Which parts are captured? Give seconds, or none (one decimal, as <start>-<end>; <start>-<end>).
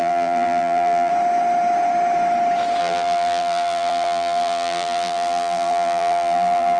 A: 1.1-2.8